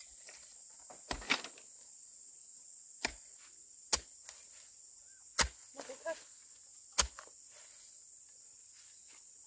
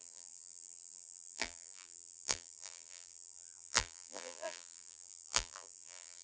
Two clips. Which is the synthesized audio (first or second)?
second